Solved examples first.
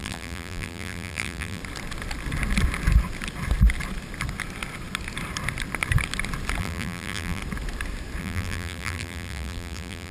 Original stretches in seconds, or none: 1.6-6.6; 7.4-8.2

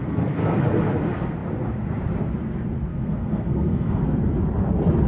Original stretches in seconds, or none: 0.6-2.9; 4.0-5.1

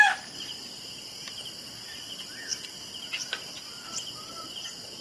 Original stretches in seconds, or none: 0.0-5.0

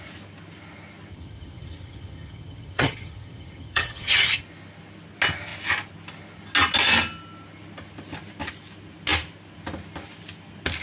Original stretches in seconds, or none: 0.0-1.1; 4.4-10.8

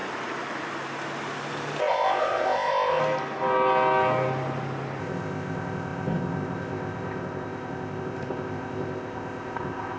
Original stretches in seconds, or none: 0.0-1.8; 3.0-5.0

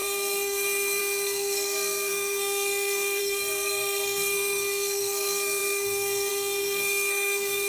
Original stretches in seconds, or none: none

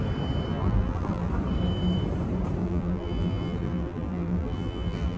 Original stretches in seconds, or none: 0.0-0.5; 1.3-2.6